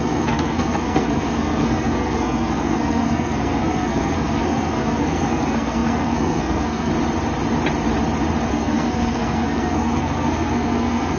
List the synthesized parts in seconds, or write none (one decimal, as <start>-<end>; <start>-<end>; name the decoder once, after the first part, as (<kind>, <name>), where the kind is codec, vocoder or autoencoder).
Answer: 0.0-6.9 (codec, SNAC); 8.5-11.2

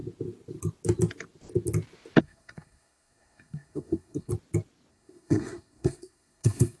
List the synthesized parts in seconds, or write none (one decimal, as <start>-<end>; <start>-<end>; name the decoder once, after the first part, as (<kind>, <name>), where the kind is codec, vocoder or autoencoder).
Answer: 2.2-4.3 (codec, SNAC); 4.9-6.8

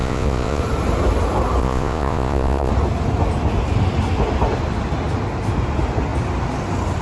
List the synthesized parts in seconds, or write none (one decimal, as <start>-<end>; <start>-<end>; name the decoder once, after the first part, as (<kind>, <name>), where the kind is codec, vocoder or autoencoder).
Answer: 0.0-0.6 (vocoder, Vocos); 1.6-2.7

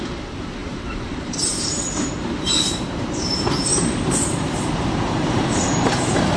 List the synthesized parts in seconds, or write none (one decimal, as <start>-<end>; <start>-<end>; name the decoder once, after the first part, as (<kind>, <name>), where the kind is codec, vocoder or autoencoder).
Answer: 0.6-2.1 (vocoder, BigVGAN v2); 3.7-6.4